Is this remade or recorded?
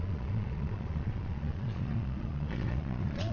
remade